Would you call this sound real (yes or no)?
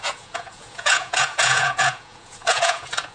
no